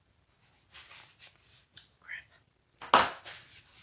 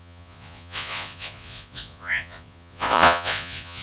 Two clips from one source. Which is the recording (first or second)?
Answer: first